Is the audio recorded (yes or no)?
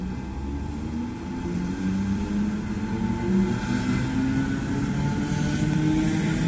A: yes